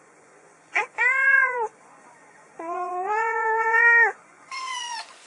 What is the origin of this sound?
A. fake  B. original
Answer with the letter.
A